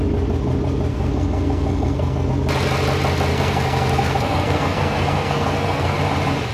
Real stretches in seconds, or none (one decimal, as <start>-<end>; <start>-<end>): 0.0-0.9; 2.3-3.3; 6.0-6.5

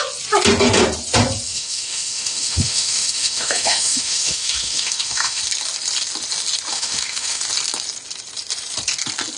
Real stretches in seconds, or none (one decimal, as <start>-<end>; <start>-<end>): 0.0-1.5; 5.4-6.7; 7.4-9.4

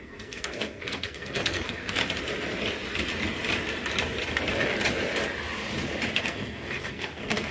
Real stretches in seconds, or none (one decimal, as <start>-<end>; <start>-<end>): 2.0-6.2

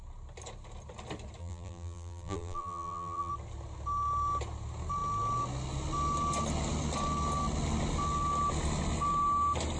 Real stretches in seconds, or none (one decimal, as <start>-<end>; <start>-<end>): 0.0-1.4; 3.3-9.8